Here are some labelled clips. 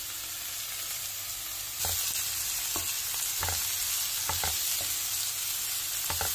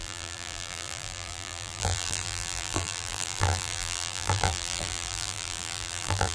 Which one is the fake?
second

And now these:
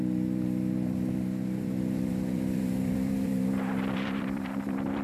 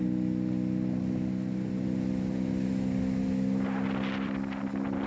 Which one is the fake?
first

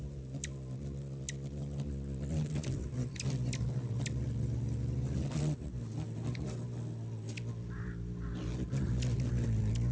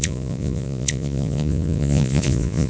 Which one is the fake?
second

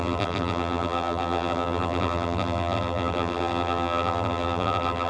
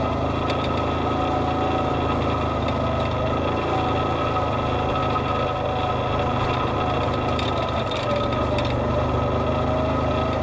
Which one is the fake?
first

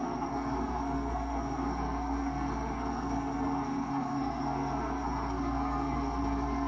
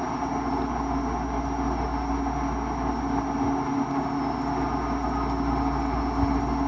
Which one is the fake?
first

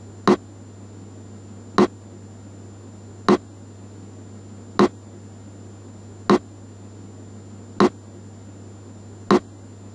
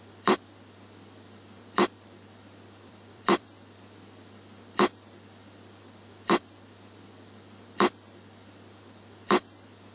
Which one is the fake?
second